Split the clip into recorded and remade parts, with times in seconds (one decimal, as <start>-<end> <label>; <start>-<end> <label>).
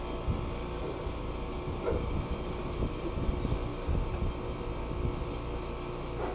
0.0-0.8 recorded; 0.8-3.3 remade; 3.3-3.7 recorded; 3.7-4.3 remade; 4.3-6.3 recorded